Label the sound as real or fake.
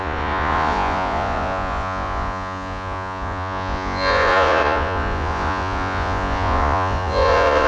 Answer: fake